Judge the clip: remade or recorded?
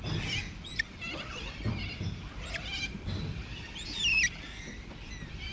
remade